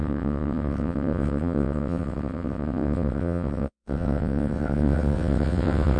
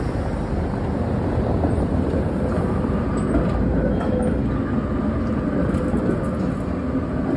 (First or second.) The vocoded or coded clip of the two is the first